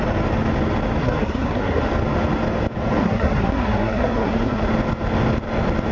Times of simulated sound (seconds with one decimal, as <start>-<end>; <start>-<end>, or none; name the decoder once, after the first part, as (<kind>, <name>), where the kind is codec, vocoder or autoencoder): 1.0-1.8 (codec, SNAC); 3.0-4.6